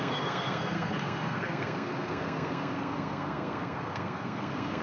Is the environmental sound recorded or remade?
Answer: remade